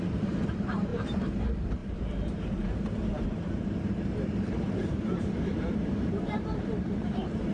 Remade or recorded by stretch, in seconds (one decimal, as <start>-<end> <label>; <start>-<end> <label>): 0.0-7.5 remade